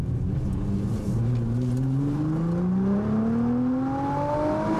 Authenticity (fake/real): real